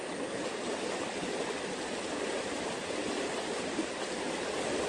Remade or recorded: recorded